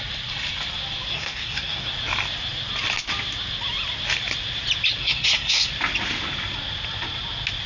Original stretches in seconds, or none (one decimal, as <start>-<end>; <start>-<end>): 0.0-1.1; 1.9-5.0; 5.7-7.7

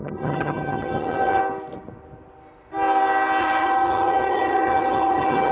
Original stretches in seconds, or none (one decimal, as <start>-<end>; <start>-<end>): 1.4-3.4

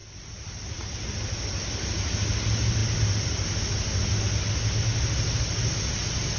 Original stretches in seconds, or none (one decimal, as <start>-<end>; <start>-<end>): 0.0-6.4

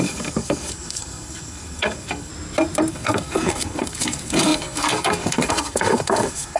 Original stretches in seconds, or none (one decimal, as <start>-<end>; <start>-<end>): 2.3-2.9

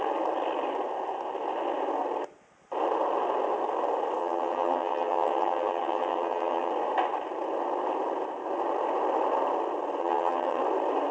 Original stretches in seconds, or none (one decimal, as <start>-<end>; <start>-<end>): 0.0-4.2; 6.7-10.0; 10.6-11.1

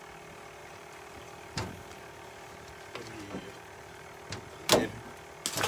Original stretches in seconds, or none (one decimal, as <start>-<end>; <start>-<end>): 0.0-0.6; 2.3-3.4; 4.0-5.7

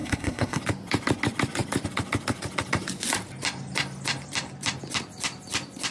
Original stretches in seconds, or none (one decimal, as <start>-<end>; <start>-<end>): 0.6-5.9